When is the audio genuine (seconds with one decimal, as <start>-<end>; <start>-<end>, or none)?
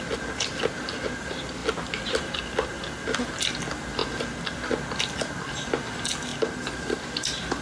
0.0-7.6